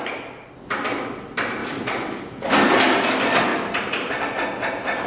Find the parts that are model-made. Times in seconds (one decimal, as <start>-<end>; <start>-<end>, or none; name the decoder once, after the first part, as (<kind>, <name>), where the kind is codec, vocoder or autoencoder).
1.6-2.5 (vocoder, BigVGAN v2); 3.5-4.2